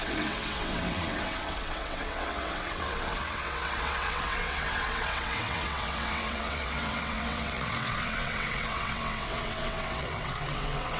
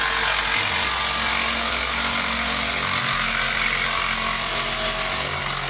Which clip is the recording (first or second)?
second